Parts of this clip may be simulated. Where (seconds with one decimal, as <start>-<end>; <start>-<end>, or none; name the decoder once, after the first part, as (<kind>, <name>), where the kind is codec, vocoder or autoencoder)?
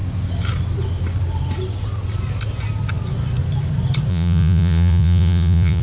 4.1-5.8 (vocoder, Vocos)